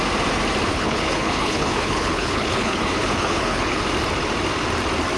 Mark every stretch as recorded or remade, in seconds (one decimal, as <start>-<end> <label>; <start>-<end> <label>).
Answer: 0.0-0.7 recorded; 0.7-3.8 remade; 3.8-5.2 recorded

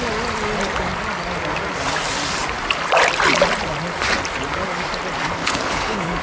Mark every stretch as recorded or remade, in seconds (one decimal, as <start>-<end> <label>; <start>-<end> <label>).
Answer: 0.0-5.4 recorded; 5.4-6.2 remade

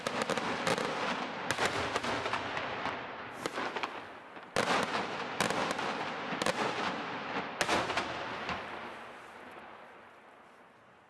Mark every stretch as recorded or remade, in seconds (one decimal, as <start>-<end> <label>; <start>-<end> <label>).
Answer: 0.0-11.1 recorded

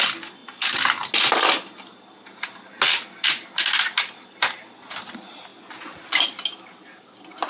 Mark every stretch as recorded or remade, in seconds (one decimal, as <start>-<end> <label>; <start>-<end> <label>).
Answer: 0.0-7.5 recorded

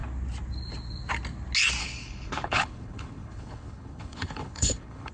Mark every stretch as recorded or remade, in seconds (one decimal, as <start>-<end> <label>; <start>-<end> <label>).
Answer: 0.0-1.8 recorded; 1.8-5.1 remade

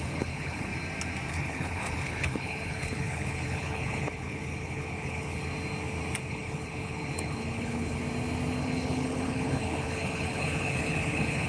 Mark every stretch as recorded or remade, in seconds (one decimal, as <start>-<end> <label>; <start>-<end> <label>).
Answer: 0.0-0.7 remade; 0.7-1.3 recorded; 1.3-5.5 remade; 5.5-6.3 recorded; 6.3-8.0 remade; 8.0-8.6 recorded; 8.6-11.5 remade

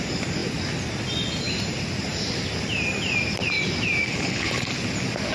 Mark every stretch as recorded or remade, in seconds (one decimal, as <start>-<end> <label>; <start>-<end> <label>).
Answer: 0.0-4.1 recorded; 4.1-4.7 remade; 4.7-5.3 recorded